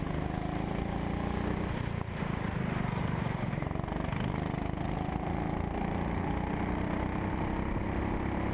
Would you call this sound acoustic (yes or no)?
yes